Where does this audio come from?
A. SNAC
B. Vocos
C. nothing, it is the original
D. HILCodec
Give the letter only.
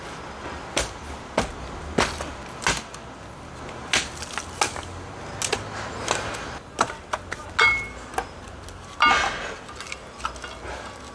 C